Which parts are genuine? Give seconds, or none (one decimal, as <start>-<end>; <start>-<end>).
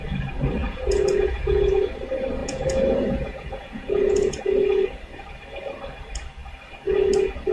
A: 0.0-0.6; 1.7-2.4; 4.4-7.5